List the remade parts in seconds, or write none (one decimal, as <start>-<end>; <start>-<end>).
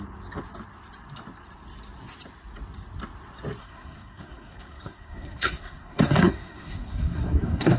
3.6-7.8